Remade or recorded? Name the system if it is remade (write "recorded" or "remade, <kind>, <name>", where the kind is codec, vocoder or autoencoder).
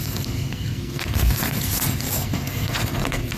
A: remade, codec, SNAC